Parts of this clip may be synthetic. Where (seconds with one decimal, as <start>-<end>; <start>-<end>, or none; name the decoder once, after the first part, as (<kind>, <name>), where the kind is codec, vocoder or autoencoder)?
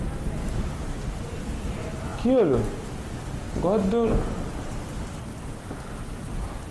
none